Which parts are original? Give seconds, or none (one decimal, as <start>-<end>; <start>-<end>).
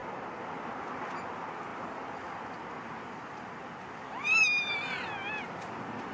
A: 0.0-6.1